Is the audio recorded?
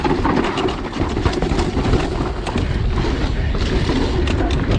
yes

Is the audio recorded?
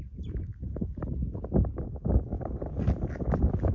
yes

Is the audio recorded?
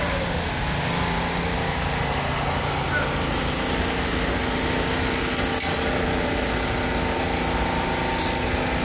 yes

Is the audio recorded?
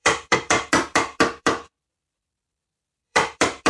no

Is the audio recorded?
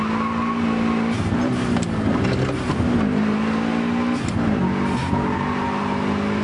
yes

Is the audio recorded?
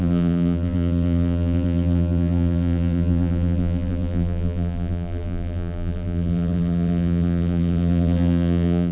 no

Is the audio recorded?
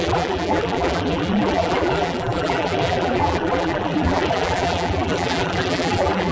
no